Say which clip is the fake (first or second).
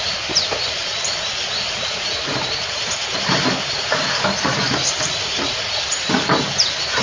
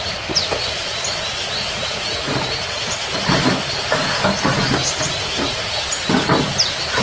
first